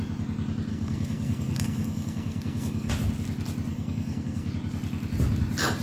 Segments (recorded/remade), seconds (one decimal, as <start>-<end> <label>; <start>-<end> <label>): 0.0-0.7 recorded; 0.7-2.9 remade; 2.9-3.7 recorded; 3.7-4.5 remade; 4.5-5.8 recorded